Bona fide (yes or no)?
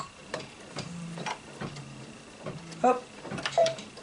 no